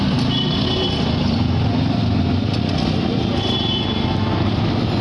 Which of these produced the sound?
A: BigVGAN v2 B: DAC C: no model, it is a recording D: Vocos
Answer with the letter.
C